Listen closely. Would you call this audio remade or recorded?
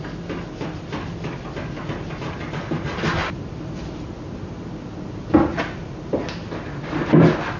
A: recorded